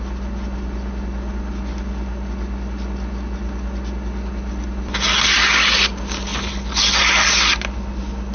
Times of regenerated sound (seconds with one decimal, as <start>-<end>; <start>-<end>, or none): none